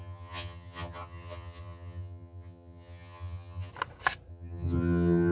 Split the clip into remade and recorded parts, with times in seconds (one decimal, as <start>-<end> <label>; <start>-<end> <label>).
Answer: 0.0-3.7 remade; 3.7-4.3 recorded; 4.3-5.3 remade